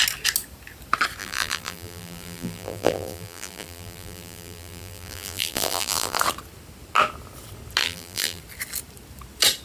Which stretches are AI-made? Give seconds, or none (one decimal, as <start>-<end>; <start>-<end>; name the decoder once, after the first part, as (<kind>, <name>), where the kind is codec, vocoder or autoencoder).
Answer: 1.2-6.2 (vocoder, BigVGAN v2); 7.8-8.4

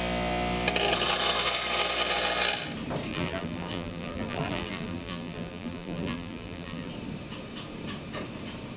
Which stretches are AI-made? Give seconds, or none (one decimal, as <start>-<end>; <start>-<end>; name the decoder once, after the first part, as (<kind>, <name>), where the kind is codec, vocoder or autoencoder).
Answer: 3.1-6.9 (vocoder, BigVGAN v2)